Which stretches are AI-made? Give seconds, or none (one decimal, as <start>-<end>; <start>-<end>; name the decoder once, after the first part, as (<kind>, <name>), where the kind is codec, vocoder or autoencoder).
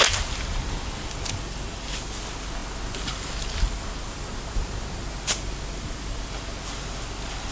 none